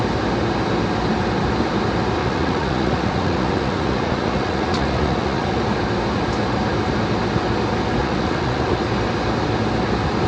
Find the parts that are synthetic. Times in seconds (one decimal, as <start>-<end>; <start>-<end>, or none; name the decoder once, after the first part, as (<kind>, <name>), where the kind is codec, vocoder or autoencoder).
2.2-5.6 (vocoder, Vocos); 8.0-8.8